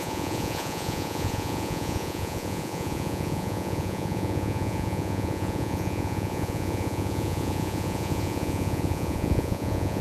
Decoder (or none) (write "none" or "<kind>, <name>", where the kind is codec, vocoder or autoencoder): vocoder, Vocos